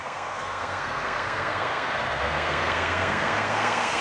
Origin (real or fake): fake